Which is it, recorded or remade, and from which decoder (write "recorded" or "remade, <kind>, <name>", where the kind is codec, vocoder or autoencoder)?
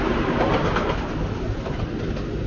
recorded